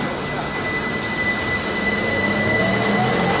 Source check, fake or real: real